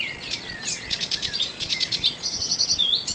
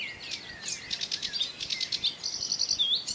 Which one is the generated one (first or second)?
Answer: first